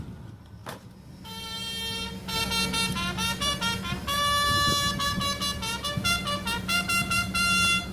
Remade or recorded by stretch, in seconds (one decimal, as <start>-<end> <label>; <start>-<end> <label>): 0.0-7.9 recorded